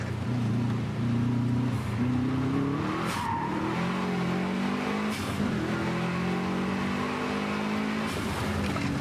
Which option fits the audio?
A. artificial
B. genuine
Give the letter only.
B